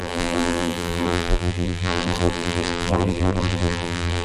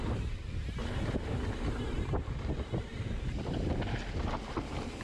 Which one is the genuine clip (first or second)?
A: second